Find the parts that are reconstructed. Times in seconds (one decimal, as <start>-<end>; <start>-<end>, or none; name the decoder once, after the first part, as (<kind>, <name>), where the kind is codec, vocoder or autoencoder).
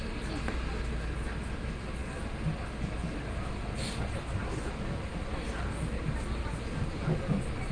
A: none